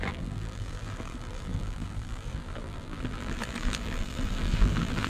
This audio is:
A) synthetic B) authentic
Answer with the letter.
A